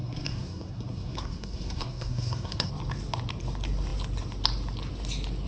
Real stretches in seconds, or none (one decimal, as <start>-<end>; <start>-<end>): 2.7-5.5